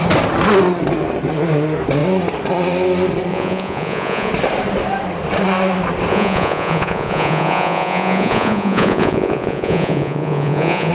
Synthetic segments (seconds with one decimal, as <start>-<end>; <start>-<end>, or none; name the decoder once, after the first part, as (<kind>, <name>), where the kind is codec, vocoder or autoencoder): 3.3-4.3 (vocoder, Vocos); 6.1-10.9